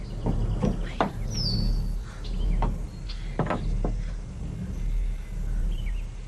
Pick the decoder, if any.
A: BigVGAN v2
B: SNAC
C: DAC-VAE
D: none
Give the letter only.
D